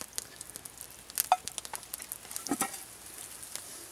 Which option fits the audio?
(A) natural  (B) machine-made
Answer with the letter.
A